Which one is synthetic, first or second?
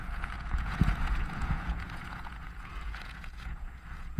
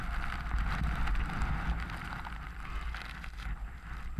first